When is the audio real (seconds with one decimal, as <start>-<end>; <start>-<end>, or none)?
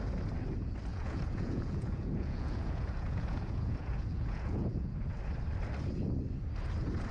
0.0-0.9; 5.2-7.1